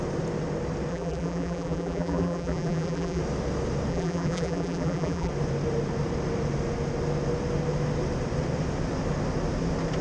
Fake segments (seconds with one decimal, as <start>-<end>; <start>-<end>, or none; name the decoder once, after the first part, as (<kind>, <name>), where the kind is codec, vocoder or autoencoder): 0.9-3.2 (vocoder, BigVGAN v2); 3.9-5.3